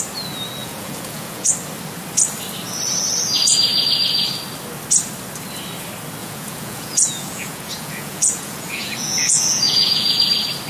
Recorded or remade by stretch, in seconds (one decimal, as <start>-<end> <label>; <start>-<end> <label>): 0.0-0.6 recorded; 0.6-1.5 remade; 1.5-6.2 recorded; 6.2-10.2 remade; 10.2-10.7 recorded